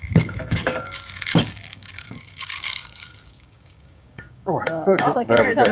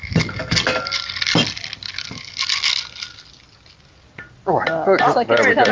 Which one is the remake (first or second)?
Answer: first